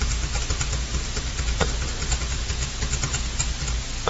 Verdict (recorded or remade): recorded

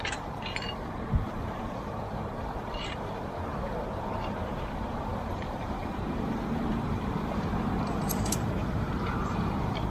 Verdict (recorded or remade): remade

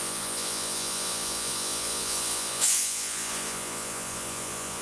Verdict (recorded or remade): remade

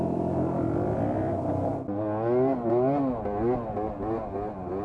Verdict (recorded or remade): recorded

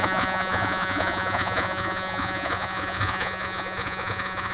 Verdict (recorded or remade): remade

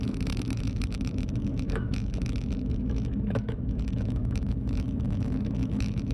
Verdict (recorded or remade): remade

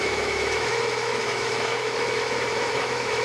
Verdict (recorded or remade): remade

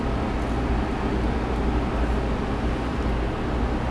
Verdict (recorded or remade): recorded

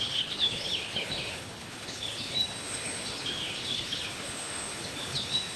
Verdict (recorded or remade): remade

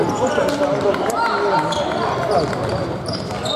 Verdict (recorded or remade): recorded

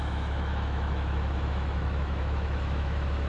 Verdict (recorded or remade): remade